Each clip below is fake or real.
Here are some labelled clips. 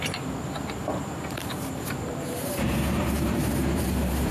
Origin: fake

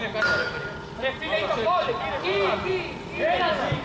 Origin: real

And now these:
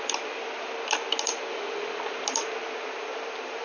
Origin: real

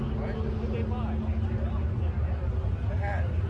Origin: real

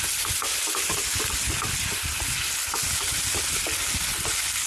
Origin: real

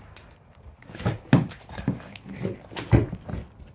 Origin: real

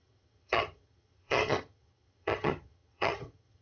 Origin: fake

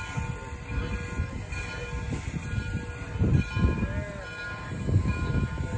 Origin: real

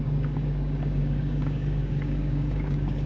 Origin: fake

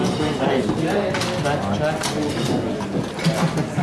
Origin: real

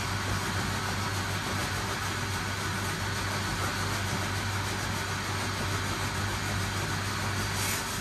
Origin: real